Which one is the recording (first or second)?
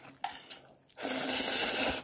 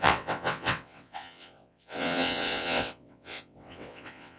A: first